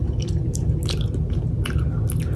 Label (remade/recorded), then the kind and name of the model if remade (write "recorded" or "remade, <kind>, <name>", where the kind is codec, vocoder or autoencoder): recorded